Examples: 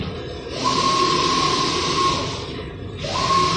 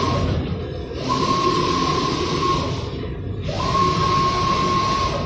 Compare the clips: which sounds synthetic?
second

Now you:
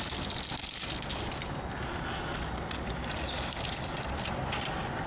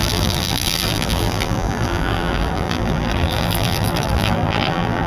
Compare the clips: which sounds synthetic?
second